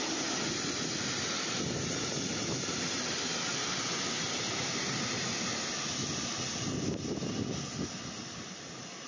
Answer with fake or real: real